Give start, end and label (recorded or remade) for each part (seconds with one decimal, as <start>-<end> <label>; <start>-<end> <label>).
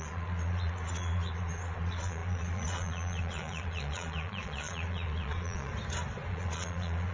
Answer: 0.0-5.7 remade; 5.7-6.3 recorded; 6.3-7.1 remade